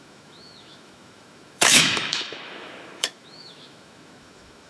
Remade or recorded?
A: remade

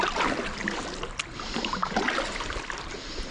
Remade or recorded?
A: recorded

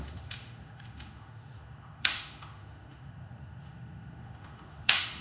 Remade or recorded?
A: remade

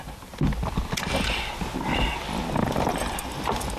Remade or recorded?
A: recorded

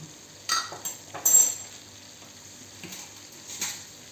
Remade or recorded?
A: recorded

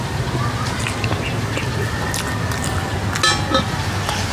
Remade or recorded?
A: recorded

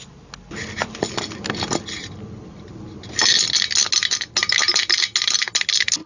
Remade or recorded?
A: recorded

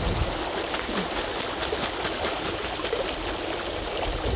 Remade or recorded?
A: recorded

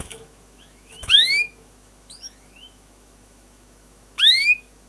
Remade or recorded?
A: remade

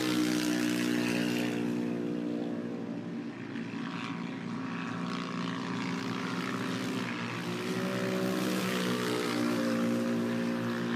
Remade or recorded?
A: recorded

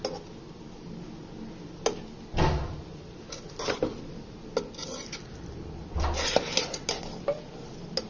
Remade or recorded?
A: recorded